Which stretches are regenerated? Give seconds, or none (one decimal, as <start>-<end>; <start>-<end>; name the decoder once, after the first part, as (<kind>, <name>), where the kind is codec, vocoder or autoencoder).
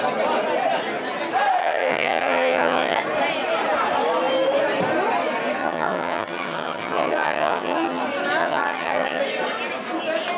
1.6-3.0 (vocoder, HiFi-GAN); 5.6-8.0; 8.4-9.2